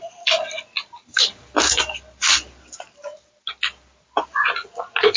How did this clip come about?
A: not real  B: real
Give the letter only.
B